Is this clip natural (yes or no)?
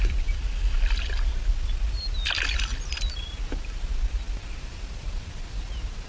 yes